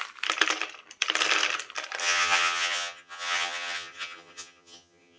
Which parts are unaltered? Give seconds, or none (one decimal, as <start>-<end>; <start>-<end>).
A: 0.0-2.0